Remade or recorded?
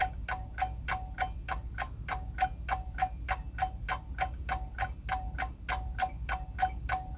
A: recorded